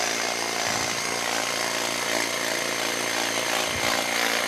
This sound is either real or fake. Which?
real